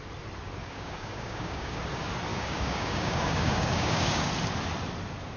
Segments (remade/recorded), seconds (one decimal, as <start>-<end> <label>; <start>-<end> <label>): 0.0-0.6 recorded; 0.6-1.8 remade; 1.8-2.3 recorded; 2.3-4.3 remade; 4.3-5.4 recorded